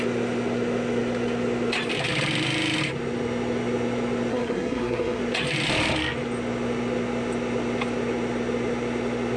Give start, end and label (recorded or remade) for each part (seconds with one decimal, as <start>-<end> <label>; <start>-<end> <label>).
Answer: 0.0-4.3 recorded; 4.3-5.2 remade; 5.2-9.4 recorded